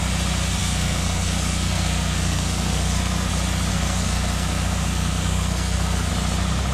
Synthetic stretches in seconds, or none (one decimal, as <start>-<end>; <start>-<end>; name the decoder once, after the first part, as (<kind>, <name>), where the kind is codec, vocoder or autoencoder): 0.6-3.3 (codec, SNAC); 3.7-6.1